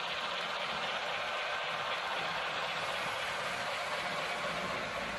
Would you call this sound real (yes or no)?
yes